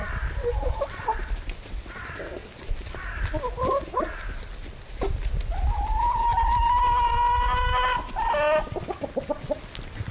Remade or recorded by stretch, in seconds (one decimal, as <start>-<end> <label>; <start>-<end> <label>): 0.0-1.3 remade; 1.3-10.1 recorded